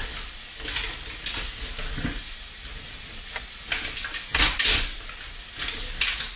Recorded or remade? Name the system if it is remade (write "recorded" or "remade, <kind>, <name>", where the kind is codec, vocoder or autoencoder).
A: recorded